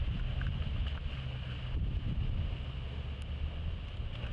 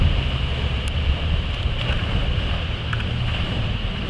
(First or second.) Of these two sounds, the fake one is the second